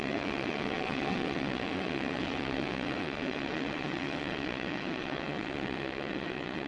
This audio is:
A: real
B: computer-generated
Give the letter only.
B